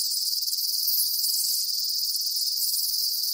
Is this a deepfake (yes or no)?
yes